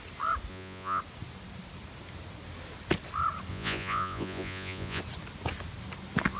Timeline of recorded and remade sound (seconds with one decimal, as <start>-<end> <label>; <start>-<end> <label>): 0.0-0.5 recorded; 0.5-1.0 remade; 1.0-3.5 recorded; 3.5-5.0 remade; 5.0-6.4 recorded